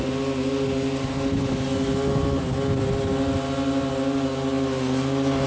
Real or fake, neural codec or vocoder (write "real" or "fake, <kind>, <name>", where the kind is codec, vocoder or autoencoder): real